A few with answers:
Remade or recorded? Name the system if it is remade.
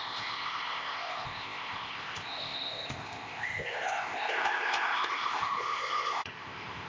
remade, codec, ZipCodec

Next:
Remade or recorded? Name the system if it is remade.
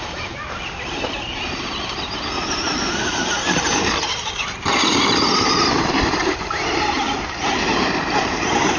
remade, vocoder, BigVGAN v2